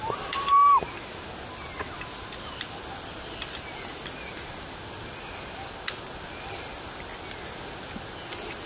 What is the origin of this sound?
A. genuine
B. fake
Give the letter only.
A